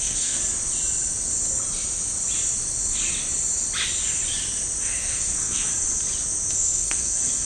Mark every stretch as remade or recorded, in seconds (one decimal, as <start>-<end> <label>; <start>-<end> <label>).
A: 0.0-0.4 remade; 0.4-4.8 recorded; 4.8-5.7 remade; 5.7-6.5 recorded; 6.5-7.4 remade